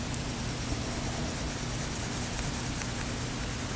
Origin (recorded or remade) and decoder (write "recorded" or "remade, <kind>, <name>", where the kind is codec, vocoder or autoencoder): recorded